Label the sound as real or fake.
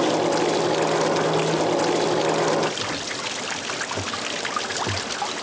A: real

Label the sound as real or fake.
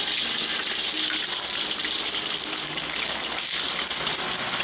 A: real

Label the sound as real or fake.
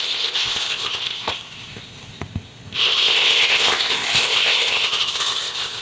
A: fake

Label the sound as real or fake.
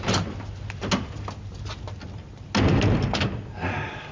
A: real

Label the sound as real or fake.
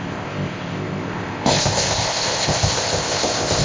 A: fake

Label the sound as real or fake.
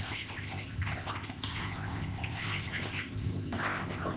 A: fake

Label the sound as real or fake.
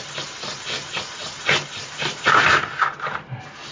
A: real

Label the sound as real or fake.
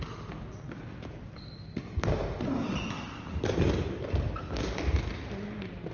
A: real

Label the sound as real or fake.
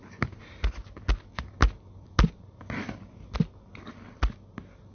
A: real